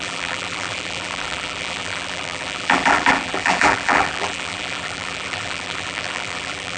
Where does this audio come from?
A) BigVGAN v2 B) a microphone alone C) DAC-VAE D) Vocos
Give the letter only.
A